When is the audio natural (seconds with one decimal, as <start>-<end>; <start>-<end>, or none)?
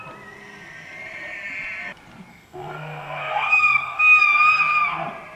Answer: 0.0-2.3; 4.2-5.4